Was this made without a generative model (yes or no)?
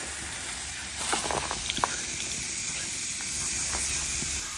yes